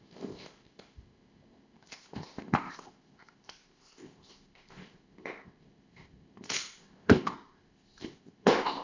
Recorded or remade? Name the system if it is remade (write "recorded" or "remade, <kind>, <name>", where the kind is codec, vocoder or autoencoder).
remade, codec, ZipCodec